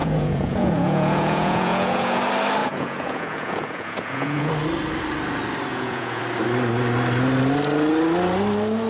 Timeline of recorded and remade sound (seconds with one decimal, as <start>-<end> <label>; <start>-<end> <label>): 0.0-2.2 remade; 2.2-2.6 recorded; 2.6-4.5 remade; 4.5-5.7 recorded; 5.7-6.2 remade; 6.2-8.9 recorded